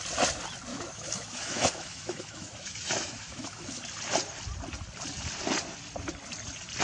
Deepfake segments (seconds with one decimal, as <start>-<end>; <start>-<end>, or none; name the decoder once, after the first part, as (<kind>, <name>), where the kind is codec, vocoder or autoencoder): 0.7-3.8 (autoencoder, DAC-VAE)